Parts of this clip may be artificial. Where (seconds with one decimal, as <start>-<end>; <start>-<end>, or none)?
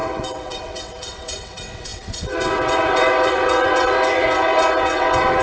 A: 0.0-5.4